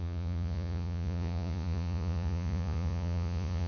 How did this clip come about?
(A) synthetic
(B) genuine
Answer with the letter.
A